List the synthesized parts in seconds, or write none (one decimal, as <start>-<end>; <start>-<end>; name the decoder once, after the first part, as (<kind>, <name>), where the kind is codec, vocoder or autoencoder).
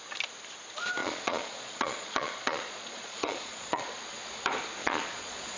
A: 1.0-4.0 (vocoder, Vocos); 4.8-5.6